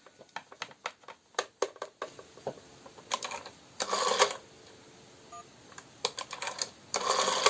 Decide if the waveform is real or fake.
real